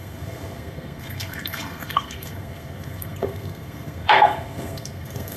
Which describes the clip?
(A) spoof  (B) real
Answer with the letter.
A